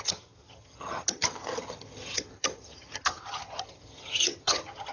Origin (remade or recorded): remade